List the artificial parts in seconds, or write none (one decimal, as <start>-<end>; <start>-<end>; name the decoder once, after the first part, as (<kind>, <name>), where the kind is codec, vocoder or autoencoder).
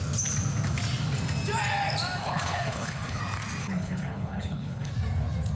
2.2-3.2 (codec, HILCodec); 3.6-4.9